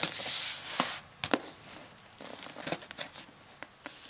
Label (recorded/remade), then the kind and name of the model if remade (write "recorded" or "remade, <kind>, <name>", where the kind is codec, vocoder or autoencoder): recorded